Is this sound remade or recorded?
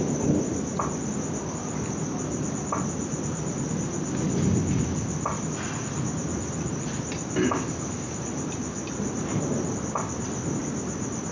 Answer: recorded